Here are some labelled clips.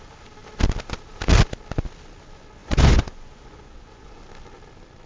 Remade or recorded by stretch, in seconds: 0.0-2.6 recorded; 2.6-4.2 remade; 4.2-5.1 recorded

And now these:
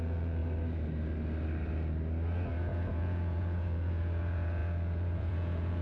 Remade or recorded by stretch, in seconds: 0.0-0.4 remade; 0.4-2.5 recorded; 2.5-5.8 remade

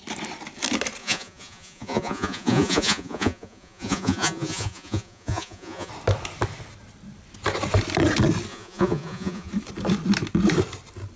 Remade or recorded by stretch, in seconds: 0.0-1.0 recorded; 1.0-5.9 remade; 5.9-8.5 recorded; 8.5-9.5 remade; 9.5-11.2 recorded

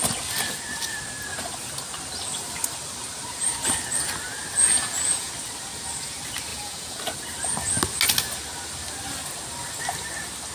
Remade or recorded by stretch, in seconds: 0.0-4.6 recorded; 4.6-5.3 remade; 5.3-6.5 recorded; 6.5-7.0 remade; 7.0-10.5 recorded

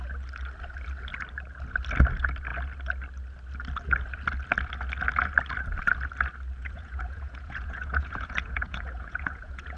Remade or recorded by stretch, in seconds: 0.0-6.6 recorded; 6.6-9.8 remade

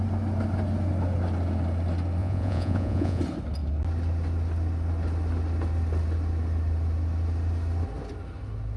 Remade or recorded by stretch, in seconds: 0.0-2.2 recorded; 2.2-3.2 remade; 3.2-8.8 recorded